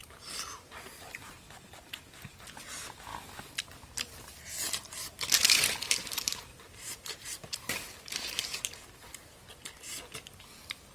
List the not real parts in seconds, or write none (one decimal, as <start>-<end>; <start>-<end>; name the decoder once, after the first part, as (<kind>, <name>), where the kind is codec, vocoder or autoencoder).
0.0-2.0 (vocoder, BigVGAN v2); 5.4-8.0